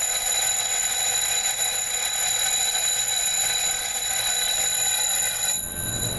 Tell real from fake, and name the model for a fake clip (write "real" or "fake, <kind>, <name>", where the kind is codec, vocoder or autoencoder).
fake, vocoder, WaveNeXt